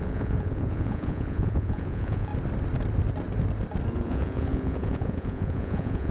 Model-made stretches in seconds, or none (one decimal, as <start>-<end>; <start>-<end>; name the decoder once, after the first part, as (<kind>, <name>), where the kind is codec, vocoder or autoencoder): 0.0-2.3 (vocoder, Vocos); 3.9-6.1